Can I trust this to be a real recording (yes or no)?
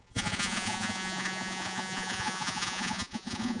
no